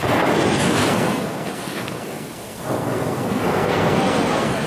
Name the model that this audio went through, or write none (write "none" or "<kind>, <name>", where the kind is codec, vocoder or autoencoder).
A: codec, SNAC